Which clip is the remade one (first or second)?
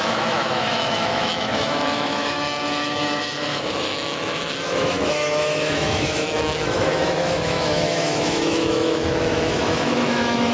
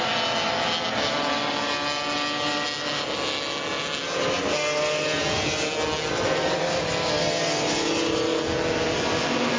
first